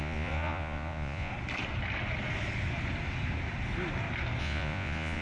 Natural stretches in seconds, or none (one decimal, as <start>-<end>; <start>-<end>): 1.3-4.4